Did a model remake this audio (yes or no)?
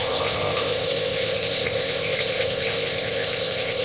yes